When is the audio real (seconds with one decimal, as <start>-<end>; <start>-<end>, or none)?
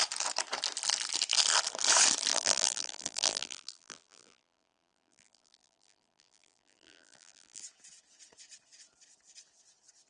0.0-2.3; 7.6-10.1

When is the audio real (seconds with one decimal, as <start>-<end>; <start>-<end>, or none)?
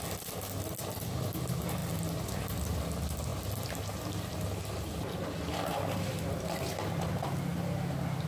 0.0-8.3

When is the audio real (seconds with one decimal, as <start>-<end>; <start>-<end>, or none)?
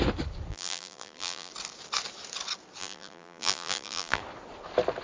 0.0-0.5; 1.5-2.8; 4.2-5.0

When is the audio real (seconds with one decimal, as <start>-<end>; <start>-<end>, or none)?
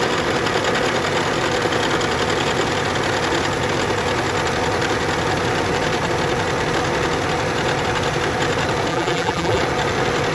0.0-8.9; 9.6-10.3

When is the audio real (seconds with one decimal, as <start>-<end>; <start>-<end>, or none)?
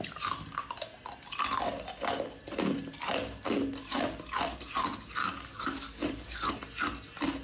0.0-5.2; 6.5-7.4